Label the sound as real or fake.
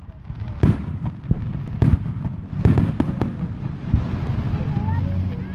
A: real